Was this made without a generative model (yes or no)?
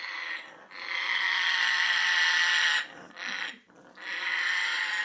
no